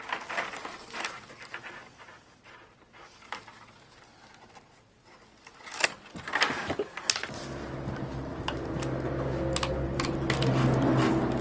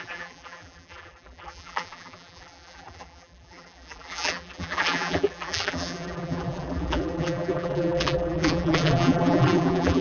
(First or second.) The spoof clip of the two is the second